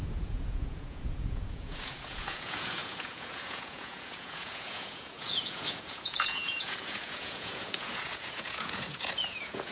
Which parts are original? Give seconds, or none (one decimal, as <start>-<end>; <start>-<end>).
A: none